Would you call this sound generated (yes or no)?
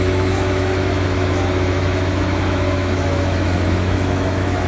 yes